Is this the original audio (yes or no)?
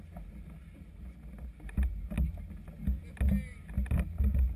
yes